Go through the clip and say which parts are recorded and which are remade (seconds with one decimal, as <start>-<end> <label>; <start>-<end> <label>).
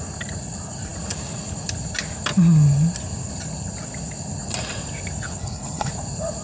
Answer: 0.0-5.4 recorded; 5.4-5.9 remade; 5.9-6.4 recorded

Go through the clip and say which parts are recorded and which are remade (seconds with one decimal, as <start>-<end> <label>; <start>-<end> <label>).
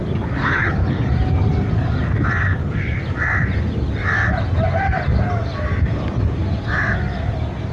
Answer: 0.0-0.4 recorded; 0.4-1.1 remade; 1.1-2.5 recorded; 2.5-3.0 remade; 3.0-7.7 recorded